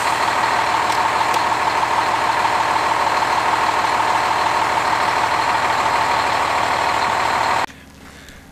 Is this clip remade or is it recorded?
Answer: recorded